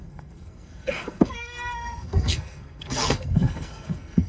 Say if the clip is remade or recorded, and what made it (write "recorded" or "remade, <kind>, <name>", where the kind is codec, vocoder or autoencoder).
remade, codec, SNAC